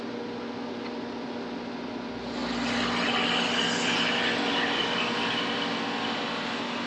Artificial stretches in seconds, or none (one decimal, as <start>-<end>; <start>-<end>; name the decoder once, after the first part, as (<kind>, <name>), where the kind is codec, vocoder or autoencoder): none